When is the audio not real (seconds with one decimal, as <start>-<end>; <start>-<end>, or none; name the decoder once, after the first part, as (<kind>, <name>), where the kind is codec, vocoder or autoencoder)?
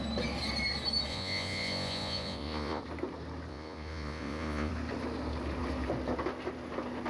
1.1-2.8 (vocoder, Vocos); 3.5-4.7